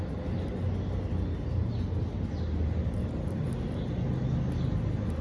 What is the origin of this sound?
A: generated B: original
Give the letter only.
B